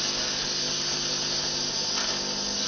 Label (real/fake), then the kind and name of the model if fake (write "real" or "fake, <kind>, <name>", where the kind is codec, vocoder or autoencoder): real